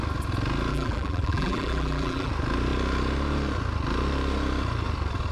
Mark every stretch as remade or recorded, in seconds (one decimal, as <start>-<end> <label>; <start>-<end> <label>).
0.0-0.7 recorded; 0.7-2.3 remade; 2.3-5.3 recorded